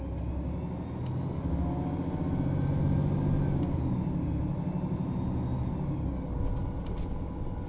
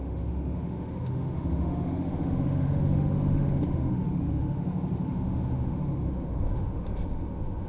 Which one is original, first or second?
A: first